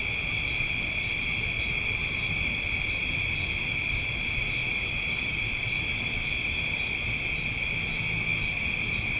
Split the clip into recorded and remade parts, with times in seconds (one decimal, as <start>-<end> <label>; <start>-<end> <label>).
0.0-9.2 recorded